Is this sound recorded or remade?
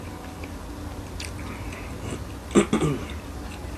recorded